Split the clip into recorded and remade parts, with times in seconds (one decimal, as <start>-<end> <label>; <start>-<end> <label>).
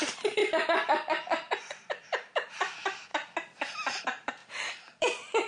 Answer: 0.0-3.1 remade; 3.1-4.0 recorded; 4.0-5.5 remade